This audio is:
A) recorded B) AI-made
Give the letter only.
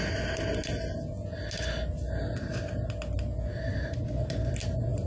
A